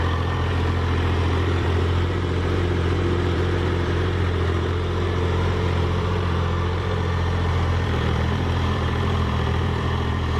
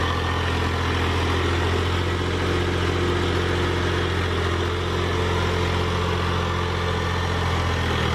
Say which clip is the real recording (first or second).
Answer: second